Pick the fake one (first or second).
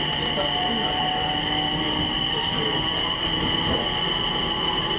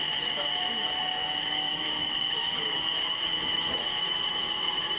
second